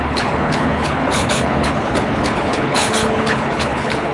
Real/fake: fake